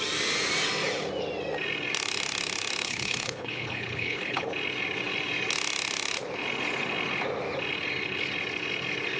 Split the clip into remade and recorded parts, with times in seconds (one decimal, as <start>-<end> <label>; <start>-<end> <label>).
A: 0.0-2.8 recorded; 2.8-4.5 remade; 4.5-9.2 recorded